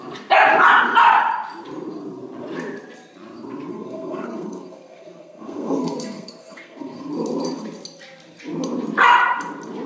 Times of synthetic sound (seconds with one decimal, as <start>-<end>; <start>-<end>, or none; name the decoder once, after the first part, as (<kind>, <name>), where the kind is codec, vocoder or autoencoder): 3.7-7.1 (codec, SNAC)